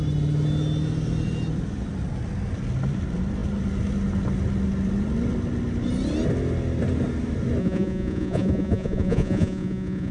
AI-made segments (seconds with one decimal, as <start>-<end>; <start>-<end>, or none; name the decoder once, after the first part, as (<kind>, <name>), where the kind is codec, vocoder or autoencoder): 7.6-10.1 (vocoder, Vocos)